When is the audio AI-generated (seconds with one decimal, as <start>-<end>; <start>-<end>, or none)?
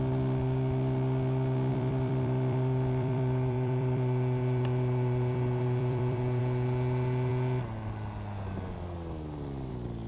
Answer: 1.7-6.4